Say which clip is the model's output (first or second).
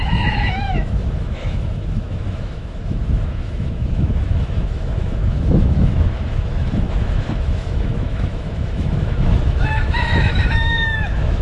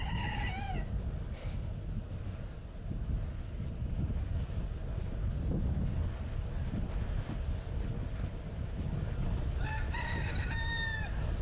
first